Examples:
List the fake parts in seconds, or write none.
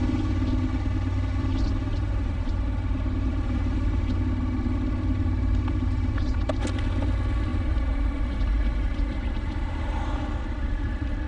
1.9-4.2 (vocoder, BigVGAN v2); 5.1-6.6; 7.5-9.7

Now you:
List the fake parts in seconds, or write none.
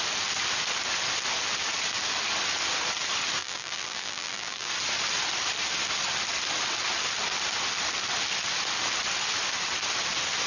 3.4-4.7 (vocoder, BigVGAN v2)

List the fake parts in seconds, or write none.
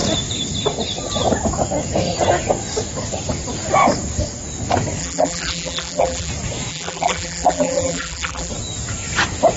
5.0-6.3 (vocoder, BigVGAN v2); 6.7-8.5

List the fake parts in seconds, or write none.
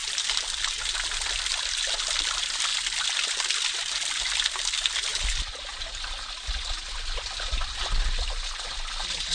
none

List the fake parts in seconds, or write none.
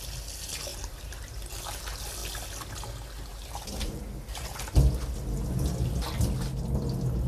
0.7-1.5 (vocoder, BigVGAN v2); 3.3-4.0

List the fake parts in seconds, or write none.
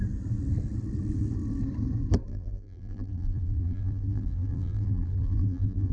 2.3-5.9 (vocoder, BigVGAN v2)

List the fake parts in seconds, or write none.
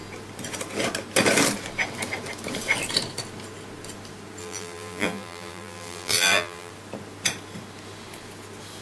4.4-6.7 (vocoder, BigVGAN v2)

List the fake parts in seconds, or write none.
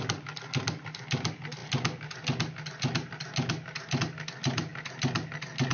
none